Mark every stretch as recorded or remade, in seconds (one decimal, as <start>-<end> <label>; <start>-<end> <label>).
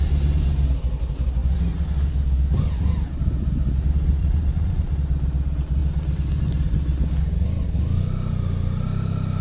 0.0-4.2 recorded; 4.2-4.9 remade; 4.9-9.4 recorded